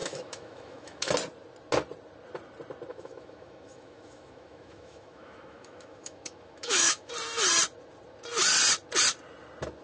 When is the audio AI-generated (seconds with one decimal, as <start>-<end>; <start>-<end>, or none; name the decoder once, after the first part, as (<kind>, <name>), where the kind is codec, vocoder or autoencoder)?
0.0-1.1 (autoencoder, DAC-VAE); 2.9-7.1